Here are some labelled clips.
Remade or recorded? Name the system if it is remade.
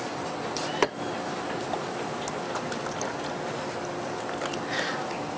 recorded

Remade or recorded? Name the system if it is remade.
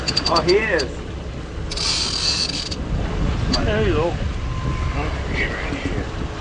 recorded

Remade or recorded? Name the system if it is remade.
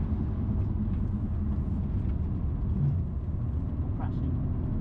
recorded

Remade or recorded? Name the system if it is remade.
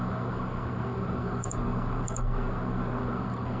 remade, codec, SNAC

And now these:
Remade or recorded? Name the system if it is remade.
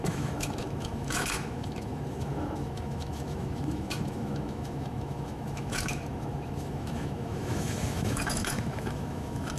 remade, autoencoder, DAC-VAE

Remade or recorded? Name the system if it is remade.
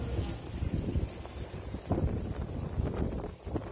recorded